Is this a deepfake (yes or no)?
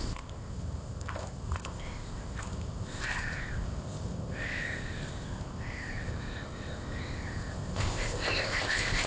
yes